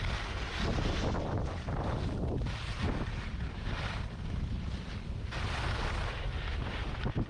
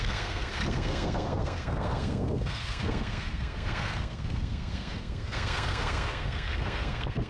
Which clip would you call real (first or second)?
first